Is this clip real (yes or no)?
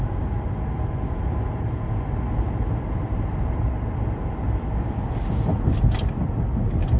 yes